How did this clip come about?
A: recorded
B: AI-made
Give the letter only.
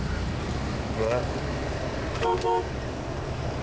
B